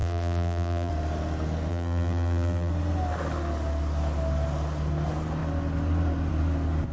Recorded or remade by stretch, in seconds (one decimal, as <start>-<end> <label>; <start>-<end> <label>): 0.0-0.9 remade; 0.9-1.7 recorded; 1.7-2.7 remade; 2.7-6.9 recorded